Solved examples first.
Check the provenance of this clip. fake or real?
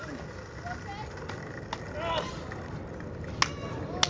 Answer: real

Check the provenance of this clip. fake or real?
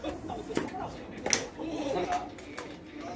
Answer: real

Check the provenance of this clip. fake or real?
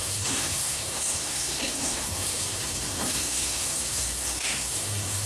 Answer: fake